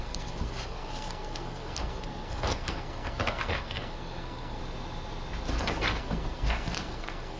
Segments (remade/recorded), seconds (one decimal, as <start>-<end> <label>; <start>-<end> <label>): 0.0-4.6 remade; 4.6-5.5 recorded; 5.5-7.4 remade